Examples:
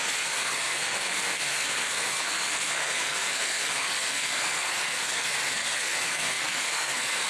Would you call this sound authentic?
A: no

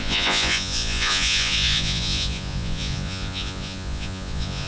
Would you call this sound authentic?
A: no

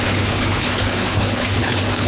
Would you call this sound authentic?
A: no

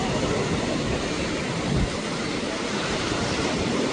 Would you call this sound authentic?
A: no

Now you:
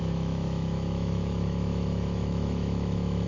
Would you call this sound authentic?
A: no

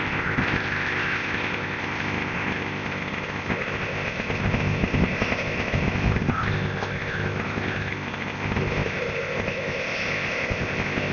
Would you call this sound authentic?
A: no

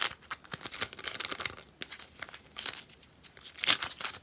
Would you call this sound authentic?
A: yes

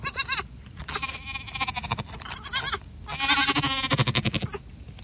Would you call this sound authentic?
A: yes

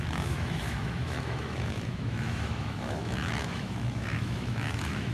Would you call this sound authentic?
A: no